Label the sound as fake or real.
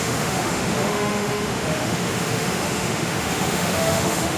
fake